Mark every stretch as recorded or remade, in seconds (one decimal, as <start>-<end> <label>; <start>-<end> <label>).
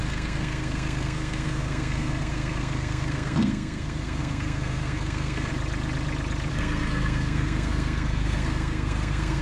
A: 0.0-5.5 remade; 5.5-6.5 recorded; 6.5-9.4 remade